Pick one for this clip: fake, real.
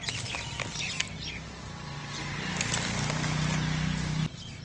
real